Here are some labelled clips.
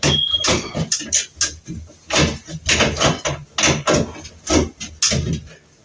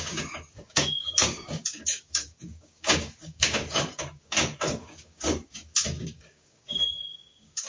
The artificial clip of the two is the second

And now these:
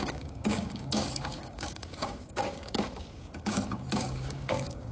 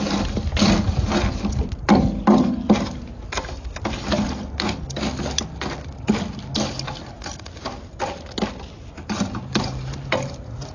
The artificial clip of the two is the first